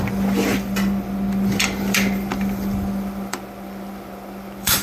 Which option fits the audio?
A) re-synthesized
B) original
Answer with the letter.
A